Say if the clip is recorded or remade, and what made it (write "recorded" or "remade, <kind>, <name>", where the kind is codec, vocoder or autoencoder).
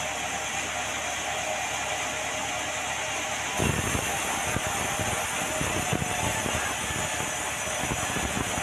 recorded